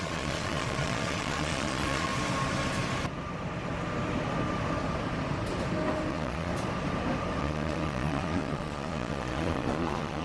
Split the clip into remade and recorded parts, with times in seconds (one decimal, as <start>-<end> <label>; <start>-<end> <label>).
0.0-2.1 remade; 2.1-6.1 recorded; 6.1-6.5 remade; 6.5-7.4 recorded; 7.4-10.2 remade